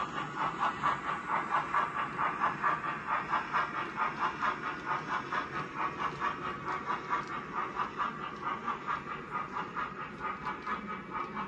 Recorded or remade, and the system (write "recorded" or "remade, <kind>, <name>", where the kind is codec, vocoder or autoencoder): recorded